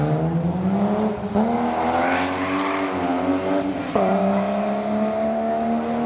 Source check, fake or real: real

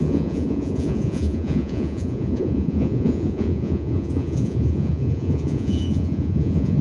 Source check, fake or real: fake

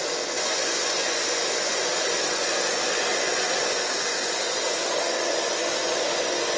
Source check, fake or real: fake